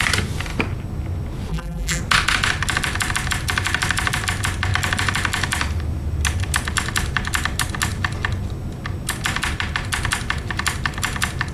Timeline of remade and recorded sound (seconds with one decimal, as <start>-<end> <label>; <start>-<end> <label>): 0.0-1.5 recorded; 1.5-2.0 remade; 2.0-11.5 recorded